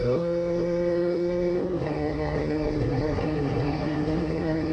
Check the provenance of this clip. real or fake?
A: fake